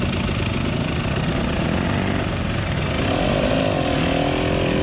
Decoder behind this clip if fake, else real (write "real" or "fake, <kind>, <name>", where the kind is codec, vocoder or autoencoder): real